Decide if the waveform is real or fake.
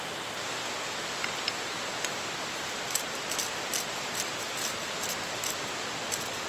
real